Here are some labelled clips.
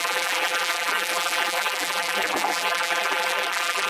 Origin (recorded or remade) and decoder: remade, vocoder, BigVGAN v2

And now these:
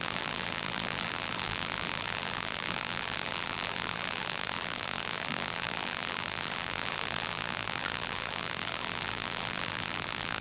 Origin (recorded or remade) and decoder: remade, vocoder, BigVGAN v2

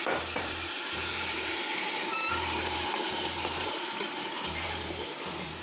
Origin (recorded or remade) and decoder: remade, vocoder, BigVGAN v2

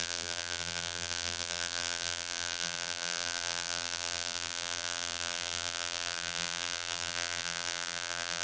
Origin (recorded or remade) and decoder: remade, vocoder, BigVGAN v2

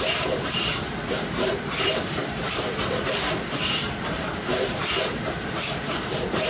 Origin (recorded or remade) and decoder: remade, vocoder, BigVGAN v2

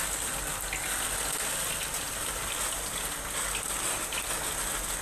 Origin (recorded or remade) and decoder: recorded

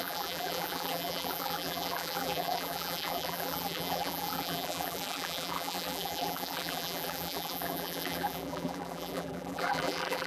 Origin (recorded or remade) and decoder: remade, vocoder, BigVGAN v2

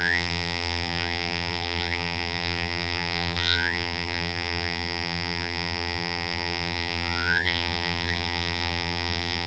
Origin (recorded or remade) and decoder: remade, vocoder, BigVGAN v2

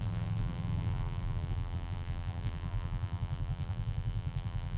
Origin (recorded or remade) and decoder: remade, vocoder, BigVGAN v2